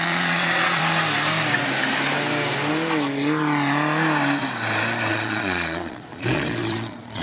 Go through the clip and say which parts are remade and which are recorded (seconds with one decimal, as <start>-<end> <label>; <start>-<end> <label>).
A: 0.0-0.8 remade; 0.8-5.1 recorded; 5.1-7.2 remade